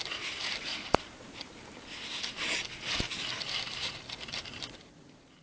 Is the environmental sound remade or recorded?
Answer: remade